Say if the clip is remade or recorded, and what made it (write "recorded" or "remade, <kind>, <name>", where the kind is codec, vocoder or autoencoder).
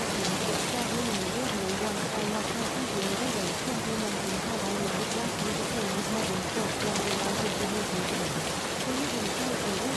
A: recorded